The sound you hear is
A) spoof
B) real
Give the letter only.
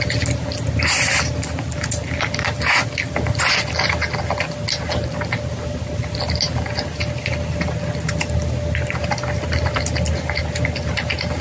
B